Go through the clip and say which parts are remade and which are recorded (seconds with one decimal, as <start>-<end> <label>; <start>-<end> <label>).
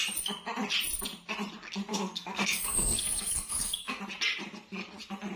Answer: 0.0-1.9 recorded; 1.9-4.0 remade; 4.0-5.4 recorded